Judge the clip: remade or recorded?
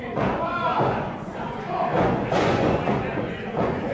remade